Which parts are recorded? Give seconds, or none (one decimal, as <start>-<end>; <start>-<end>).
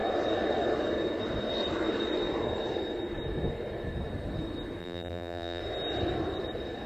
0.0-4.8; 5.6-6.9